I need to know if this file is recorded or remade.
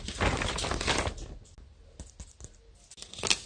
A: recorded